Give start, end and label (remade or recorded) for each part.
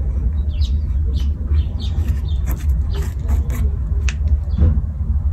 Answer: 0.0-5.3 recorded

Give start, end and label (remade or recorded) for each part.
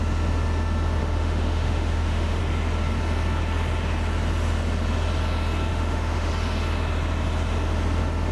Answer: 0.0-1.0 recorded; 1.0-2.4 remade; 2.4-5.7 recorded; 5.7-6.3 remade; 6.3-8.3 recorded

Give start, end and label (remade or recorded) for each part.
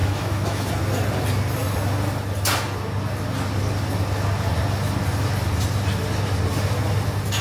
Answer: 0.0-0.7 remade; 0.7-7.4 recorded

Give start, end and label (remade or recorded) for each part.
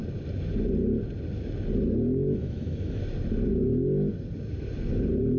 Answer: 0.0-2.4 recorded; 2.4-3.0 remade; 3.0-5.4 recorded